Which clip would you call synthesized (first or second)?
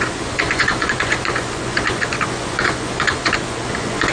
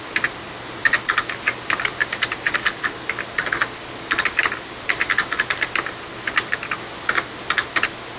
first